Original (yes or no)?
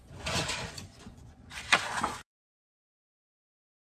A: no